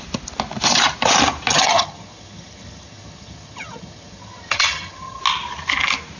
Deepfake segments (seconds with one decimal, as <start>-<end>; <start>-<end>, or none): 1.5-5.2